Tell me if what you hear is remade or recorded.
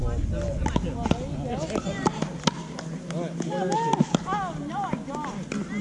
recorded